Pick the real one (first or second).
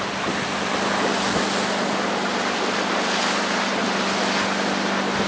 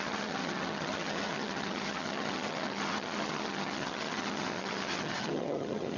first